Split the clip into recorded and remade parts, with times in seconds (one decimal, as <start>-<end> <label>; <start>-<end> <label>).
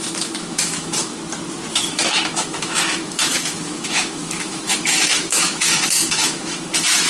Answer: 0.0-1.2 remade; 1.2-1.7 recorded; 1.7-7.1 remade